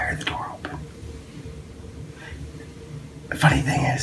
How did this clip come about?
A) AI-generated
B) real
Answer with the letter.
B